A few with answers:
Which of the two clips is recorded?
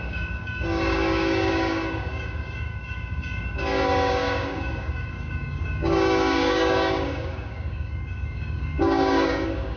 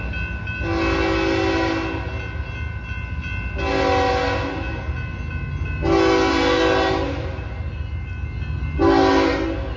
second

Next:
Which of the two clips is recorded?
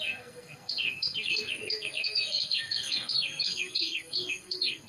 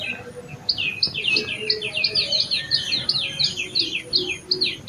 second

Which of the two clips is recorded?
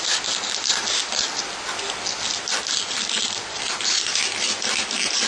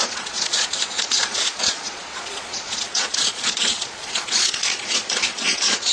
first